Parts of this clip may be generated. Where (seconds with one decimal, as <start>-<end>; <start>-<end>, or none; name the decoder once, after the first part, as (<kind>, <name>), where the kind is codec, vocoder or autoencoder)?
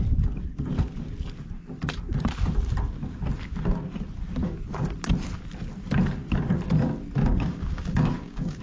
7.2-8.6 (codec, DAC)